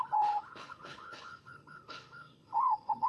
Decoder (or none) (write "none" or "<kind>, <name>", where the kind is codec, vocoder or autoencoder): codec, HILCodec